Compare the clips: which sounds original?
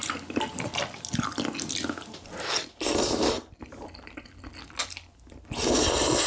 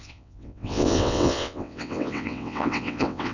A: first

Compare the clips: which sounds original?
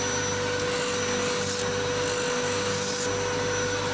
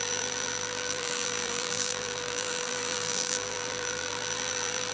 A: first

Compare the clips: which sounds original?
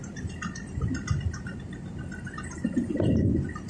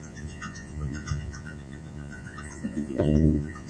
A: first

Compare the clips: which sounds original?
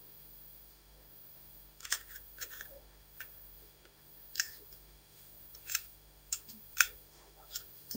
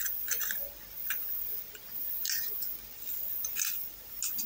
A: second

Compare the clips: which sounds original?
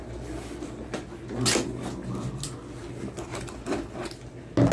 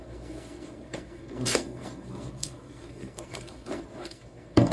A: first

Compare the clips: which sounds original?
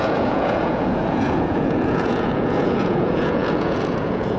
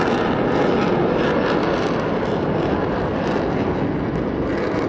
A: second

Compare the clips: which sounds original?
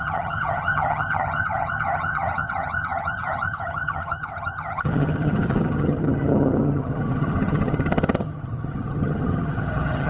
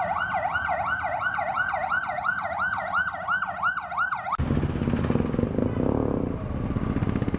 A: second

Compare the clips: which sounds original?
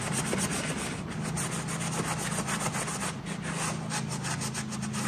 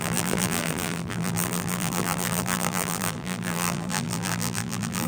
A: first